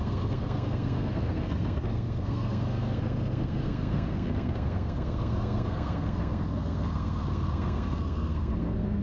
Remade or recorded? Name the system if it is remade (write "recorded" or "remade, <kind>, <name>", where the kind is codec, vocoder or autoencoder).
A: remade, codec, SNAC